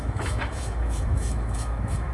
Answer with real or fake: fake